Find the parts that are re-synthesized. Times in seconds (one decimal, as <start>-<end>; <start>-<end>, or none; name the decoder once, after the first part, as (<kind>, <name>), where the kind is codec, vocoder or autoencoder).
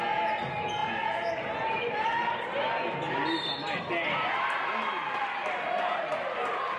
none